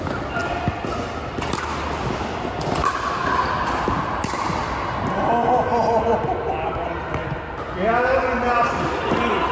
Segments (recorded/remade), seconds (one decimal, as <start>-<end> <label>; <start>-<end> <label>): 0.0-9.5 recorded